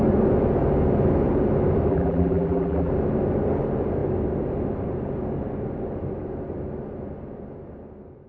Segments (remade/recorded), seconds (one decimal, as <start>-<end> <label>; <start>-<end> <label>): 0.0-1.9 recorded; 1.9-2.9 remade; 2.9-8.3 recorded